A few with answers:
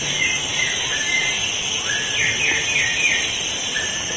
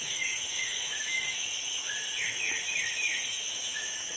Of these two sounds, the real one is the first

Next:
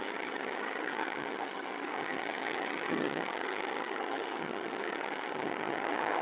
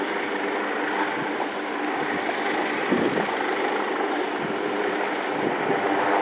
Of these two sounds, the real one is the second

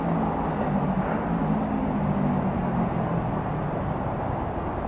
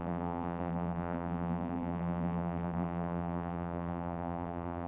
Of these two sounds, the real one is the first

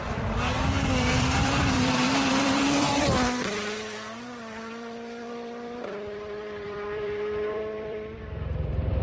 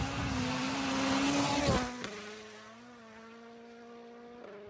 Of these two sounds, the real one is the second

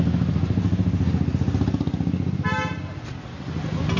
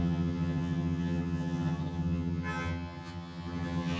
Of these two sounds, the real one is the first